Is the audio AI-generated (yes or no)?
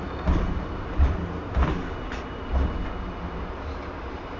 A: no